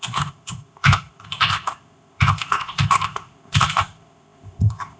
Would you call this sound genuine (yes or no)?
no